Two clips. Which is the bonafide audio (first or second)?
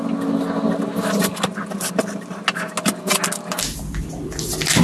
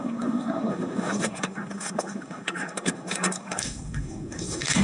first